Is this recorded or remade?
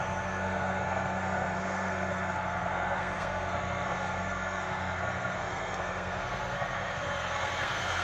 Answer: remade